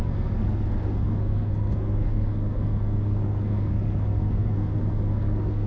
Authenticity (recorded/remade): remade